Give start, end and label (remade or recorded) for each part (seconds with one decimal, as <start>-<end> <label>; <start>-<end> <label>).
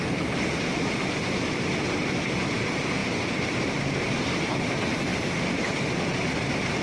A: 0.0-6.8 recorded